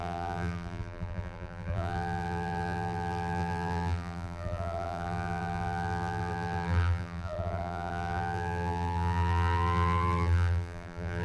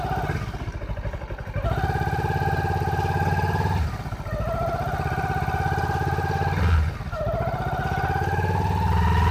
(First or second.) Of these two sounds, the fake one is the first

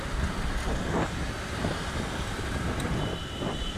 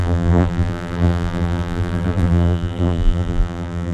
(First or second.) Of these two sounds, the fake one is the second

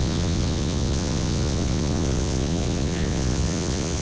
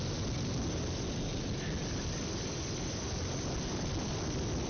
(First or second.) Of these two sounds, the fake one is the first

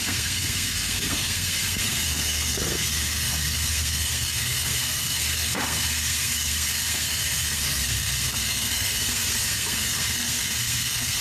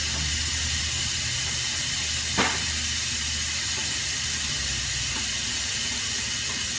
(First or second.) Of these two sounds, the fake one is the first